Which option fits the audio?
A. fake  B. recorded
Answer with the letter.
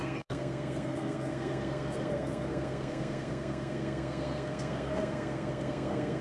A